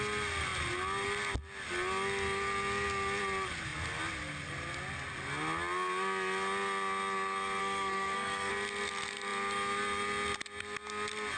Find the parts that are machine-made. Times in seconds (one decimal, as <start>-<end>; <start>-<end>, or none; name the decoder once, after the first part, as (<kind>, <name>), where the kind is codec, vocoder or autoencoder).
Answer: 7.6-8.5 (codec, SNAC)